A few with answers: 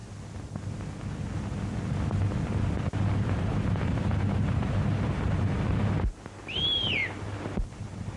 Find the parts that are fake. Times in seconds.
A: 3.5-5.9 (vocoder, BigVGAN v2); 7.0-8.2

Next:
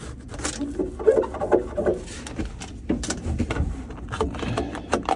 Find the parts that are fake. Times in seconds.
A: none